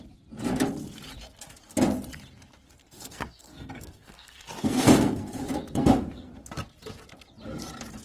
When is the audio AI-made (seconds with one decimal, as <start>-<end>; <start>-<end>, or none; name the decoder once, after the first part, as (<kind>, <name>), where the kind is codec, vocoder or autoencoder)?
2.8-6.5 (codec, SNAC)